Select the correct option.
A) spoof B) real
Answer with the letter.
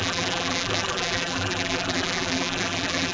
A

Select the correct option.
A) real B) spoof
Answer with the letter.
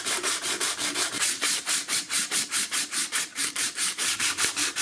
B